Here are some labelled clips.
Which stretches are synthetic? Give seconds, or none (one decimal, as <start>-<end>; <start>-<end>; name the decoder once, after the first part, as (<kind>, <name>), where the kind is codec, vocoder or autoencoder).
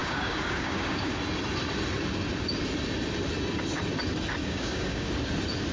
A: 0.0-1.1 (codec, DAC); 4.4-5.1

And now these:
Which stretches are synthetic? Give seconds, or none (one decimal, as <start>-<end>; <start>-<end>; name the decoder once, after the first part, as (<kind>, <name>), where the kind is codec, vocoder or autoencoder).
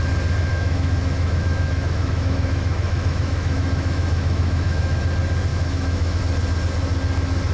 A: 0.5-5.0 (autoencoder, DAC-VAE); 5.5-6.2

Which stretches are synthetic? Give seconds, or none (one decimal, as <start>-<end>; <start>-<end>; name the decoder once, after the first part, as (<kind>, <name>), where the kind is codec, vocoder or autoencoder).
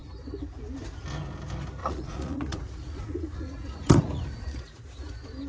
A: 1.8-5.1 (vocoder, Vocos)